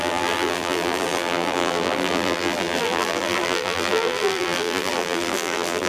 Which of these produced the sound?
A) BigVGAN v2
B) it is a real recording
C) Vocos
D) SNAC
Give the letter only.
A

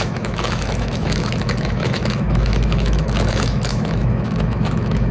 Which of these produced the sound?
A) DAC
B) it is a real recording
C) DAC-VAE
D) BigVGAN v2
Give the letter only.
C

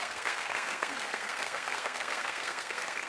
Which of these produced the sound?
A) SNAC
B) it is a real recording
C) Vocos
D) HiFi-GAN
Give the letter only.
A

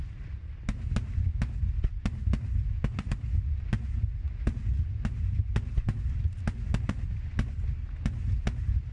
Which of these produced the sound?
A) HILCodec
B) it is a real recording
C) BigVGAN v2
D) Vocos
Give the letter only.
B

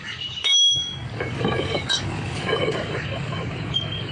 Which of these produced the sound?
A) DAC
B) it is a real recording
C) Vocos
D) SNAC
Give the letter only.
A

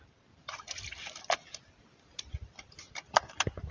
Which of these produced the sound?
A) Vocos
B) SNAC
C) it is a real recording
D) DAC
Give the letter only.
C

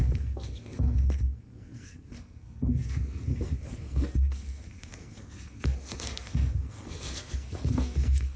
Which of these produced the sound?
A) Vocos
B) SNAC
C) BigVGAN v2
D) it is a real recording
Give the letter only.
B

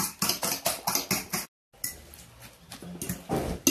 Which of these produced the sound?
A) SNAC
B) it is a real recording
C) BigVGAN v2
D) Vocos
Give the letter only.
B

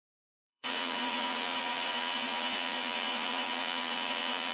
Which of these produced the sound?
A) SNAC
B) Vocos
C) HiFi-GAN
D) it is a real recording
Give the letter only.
B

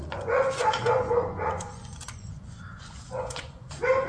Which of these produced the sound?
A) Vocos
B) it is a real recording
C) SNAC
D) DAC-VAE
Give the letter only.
A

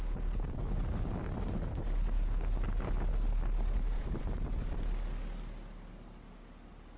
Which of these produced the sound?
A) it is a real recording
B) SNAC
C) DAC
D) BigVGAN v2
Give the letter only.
A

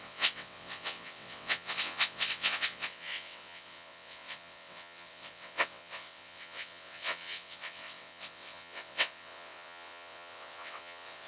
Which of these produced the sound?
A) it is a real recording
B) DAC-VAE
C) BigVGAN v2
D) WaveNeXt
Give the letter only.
D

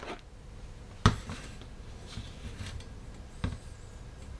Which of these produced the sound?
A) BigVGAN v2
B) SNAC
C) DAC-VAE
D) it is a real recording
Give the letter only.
D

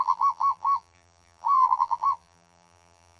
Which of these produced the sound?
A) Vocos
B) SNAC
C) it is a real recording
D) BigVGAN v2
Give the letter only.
D